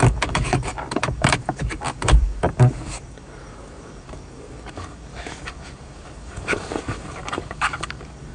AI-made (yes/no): yes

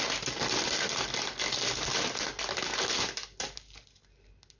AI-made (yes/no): no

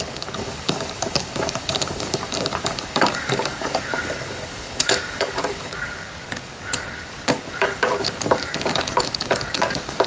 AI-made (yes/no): yes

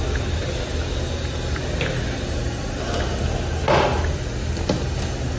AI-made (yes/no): no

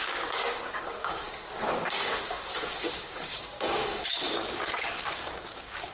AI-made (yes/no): yes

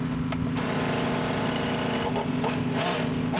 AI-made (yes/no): no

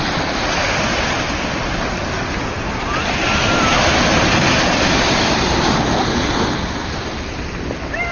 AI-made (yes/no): no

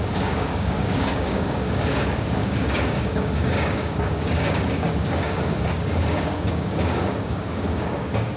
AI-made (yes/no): yes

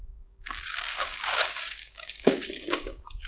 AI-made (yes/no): yes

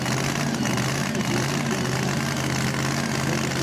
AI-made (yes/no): no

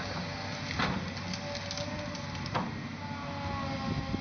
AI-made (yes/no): no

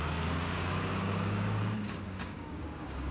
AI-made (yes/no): yes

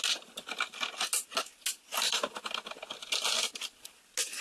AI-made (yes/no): no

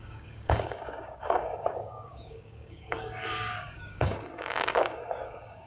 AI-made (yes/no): yes